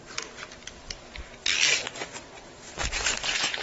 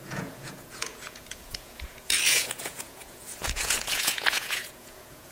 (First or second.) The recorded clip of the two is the first